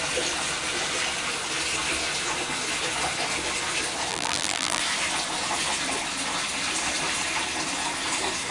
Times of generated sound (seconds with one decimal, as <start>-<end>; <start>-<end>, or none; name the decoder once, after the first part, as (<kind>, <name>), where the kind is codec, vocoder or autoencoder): 4.1-4.8 (vocoder, BigVGAN v2)